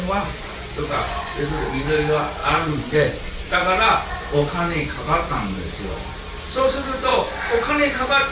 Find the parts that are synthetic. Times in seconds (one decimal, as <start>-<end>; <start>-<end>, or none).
0.0-1.4; 2.4-3.2; 7.1-7.7